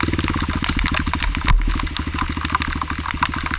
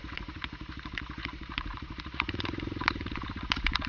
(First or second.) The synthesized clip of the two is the second